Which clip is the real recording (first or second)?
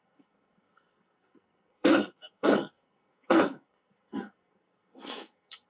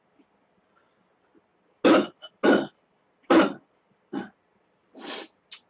second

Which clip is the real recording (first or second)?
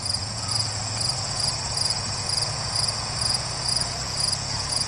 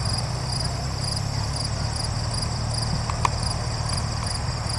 second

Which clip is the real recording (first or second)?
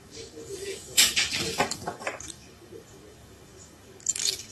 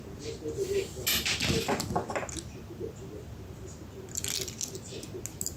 second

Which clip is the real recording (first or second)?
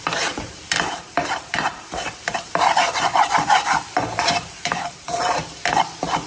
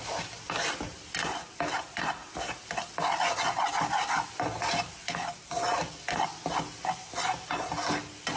second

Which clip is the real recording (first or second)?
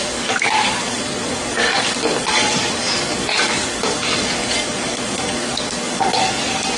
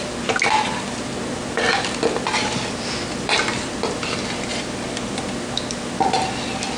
second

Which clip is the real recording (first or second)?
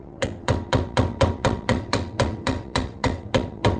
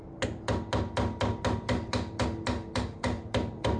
second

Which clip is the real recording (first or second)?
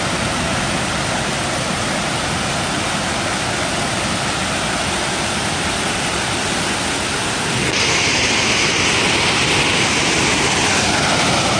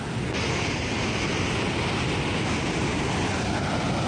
second